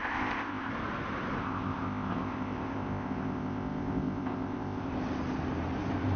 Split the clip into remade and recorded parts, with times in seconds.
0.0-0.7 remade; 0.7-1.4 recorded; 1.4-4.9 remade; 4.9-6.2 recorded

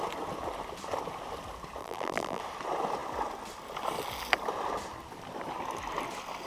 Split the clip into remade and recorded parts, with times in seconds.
0.0-1.8 recorded; 1.8-2.4 remade; 2.4-6.5 recorded

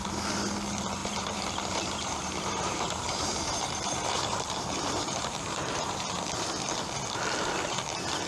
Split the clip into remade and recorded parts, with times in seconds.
0.0-1.0 recorded; 1.0-6.0 remade; 6.0-8.3 recorded

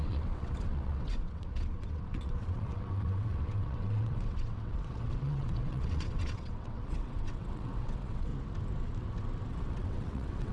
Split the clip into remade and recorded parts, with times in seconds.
0.0-8.3 remade; 8.3-9.5 recorded; 9.5-10.5 remade

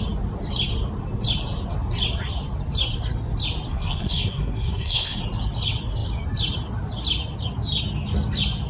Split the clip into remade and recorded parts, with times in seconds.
0.0-3.7 recorded; 3.7-5.2 remade; 5.2-8.7 recorded

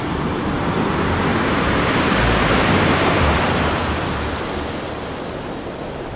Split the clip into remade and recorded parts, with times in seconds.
0.0-1.3 recorded; 1.3-3.4 remade; 3.4-3.8 recorded; 3.8-4.5 remade; 4.5-6.2 recorded

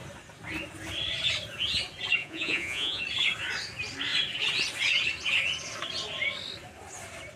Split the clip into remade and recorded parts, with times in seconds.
0.0-2.2 recorded; 2.2-3.0 remade; 3.0-7.4 recorded